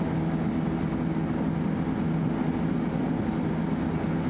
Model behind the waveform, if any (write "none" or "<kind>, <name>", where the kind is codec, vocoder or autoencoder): none